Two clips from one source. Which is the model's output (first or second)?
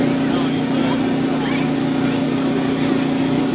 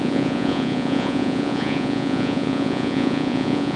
second